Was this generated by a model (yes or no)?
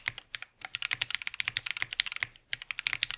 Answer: no